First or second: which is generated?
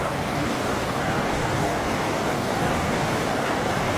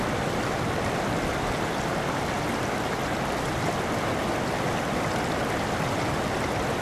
first